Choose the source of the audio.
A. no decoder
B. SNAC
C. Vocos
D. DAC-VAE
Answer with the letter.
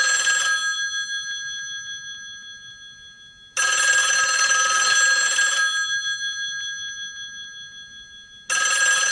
A